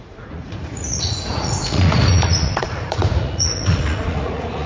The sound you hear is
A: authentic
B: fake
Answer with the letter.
B